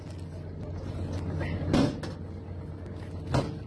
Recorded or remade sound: recorded